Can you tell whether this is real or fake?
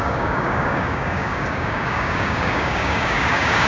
fake